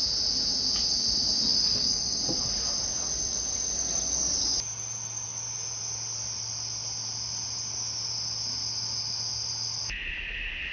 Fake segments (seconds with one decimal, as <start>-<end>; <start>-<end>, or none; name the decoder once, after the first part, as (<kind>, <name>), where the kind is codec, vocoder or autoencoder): 1.5-2.2 (codec, DAC)